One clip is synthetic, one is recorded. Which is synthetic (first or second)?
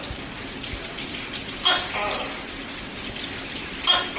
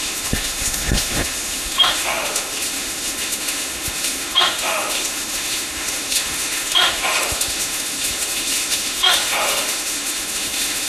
second